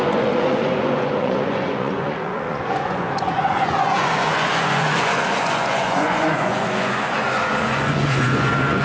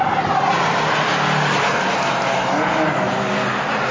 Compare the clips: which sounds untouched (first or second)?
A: second